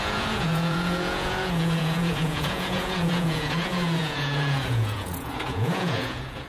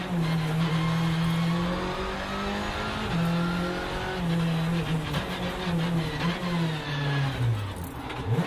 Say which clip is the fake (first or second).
first